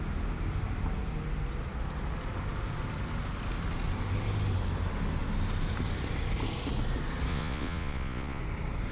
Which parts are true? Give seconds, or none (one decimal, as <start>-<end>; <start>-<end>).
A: 0.0-7.3; 8.4-8.9